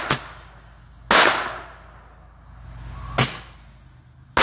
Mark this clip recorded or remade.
recorded